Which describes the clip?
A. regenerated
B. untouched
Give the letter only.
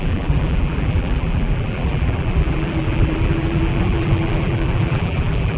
A